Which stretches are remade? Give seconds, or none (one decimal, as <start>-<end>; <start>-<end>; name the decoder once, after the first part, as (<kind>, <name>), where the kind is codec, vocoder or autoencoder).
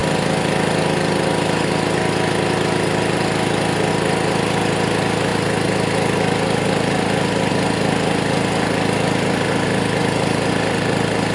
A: none